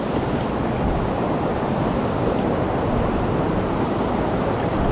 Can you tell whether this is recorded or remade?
recorded